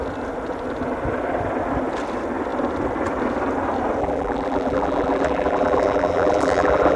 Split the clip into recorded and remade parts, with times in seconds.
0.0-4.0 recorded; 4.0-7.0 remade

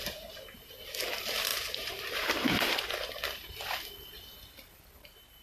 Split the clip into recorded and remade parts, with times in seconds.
0.0-0.7 remade; 0.7-1.5 recorded; 1.5-3.7 remade; 3.7-5.4 recorded

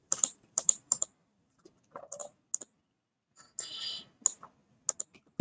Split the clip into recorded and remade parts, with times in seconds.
0.0-1.8 remade; 1.8-5.4 recorded

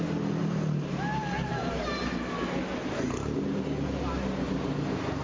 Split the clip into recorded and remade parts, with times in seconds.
0.0-0.4 recorded; 0.4-1.1 remade; 1.1-1.5 recorded; 1.5-2.3 remade; 2.3-5.2 recorded